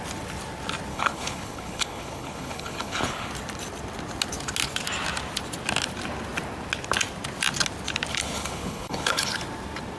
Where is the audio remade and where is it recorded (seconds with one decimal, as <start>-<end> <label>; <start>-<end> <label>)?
0.0-0.9 recorded; 0.9-3.3 remade; 3.3-8.1 recorded; 8.1-9.3 remade; 9.3-10.0 recorded